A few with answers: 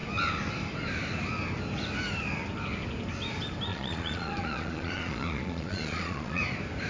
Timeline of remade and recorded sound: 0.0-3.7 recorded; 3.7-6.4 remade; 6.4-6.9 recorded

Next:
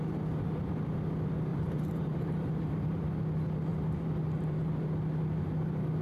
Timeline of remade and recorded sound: 0.0-1.5 recorded; 1.5-3.0 remade; 3.0-3.7 recorded; 3.7-4.7 remade; 4.7-6.0 recorded

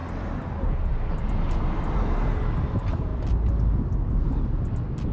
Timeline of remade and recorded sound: 0.0-5.1 recorded

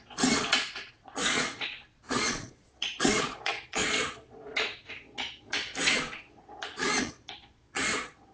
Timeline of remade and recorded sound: 0.0-8.3 remade